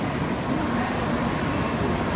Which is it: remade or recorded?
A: recorded